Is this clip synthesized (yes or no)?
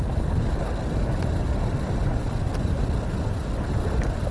no